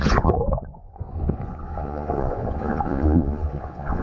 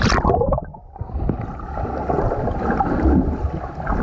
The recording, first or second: second